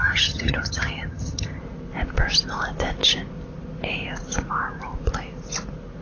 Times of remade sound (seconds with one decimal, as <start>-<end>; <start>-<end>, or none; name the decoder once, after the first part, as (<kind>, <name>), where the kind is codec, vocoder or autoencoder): 0.0-1.6 (vocoder, HiFi-GAN)